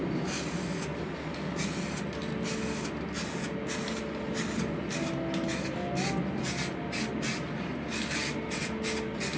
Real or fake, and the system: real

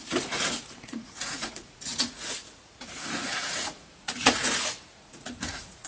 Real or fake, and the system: fake, vocoder, Vocos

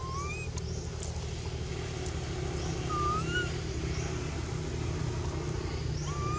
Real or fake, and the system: real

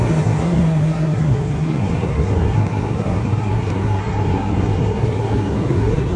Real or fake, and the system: fake, codec, SNAC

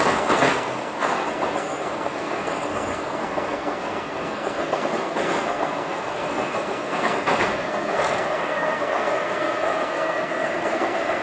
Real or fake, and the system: fake, codec, SNAC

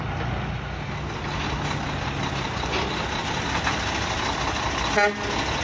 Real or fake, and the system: real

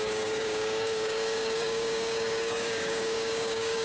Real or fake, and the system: fake, codec, DAC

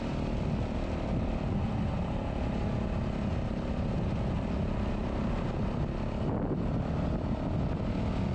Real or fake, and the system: real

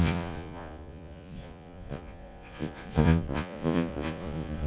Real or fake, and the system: fake, vocoder, Vocos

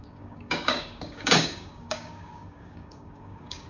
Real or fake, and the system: fake, codec, DAC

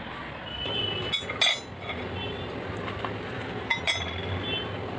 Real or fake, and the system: real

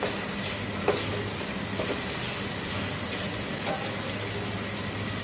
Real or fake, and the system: real